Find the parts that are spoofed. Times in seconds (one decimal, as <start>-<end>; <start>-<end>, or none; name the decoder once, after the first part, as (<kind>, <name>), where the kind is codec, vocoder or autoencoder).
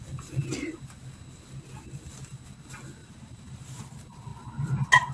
3.0-3.8 (vocoder, BigVGAN v2)